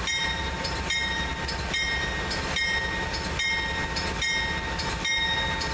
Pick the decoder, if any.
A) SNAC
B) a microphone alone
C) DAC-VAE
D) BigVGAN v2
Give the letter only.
B